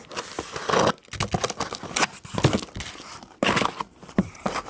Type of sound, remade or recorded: recorded